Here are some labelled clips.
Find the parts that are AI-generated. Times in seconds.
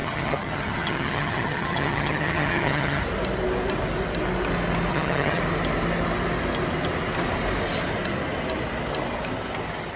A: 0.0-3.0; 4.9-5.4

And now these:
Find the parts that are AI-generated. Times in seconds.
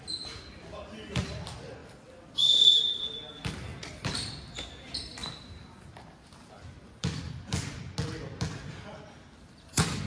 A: 1.8-3.0; 3.7-4.3; 5.2-7.2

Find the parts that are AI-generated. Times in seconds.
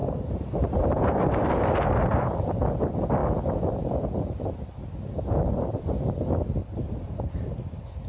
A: 0.0-2.8; 6.6-7.3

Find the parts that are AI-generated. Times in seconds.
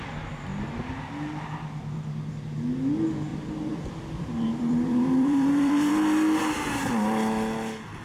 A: 3.3-5.9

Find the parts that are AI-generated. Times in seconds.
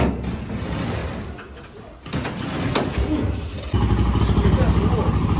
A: none